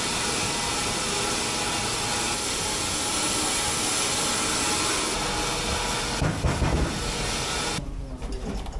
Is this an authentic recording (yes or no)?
yes